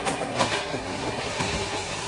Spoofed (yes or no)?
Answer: yes